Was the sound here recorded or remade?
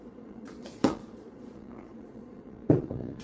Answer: remade